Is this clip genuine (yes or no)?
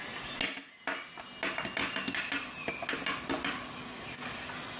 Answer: yes